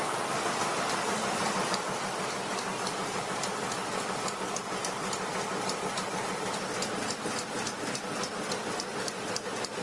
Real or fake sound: real